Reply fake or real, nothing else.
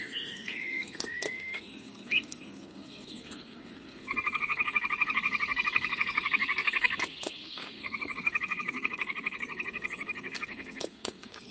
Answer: fake